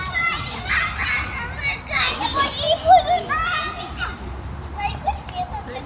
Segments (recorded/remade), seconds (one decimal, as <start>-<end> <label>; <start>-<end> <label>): 0.0-0.4 remade; 0.4-3.8 recorded; 3.8-5.9 remade